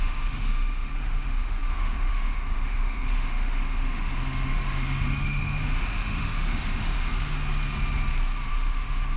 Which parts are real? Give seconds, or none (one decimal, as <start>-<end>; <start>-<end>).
7.1-8.5